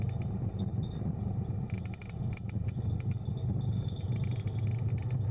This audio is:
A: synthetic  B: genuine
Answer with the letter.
B